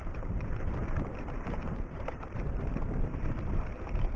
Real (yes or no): no